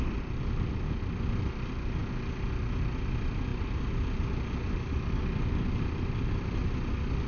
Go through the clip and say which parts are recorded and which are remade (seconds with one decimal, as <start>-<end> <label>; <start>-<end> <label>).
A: 0.0-7.3 recorded